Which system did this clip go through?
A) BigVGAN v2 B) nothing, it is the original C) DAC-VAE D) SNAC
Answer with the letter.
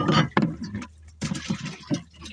B